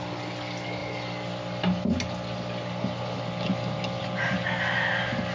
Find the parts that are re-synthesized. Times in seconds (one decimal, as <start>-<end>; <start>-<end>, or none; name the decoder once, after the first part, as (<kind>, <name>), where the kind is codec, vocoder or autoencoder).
none